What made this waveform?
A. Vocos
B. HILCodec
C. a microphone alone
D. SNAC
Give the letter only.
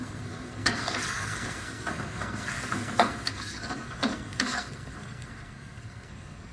D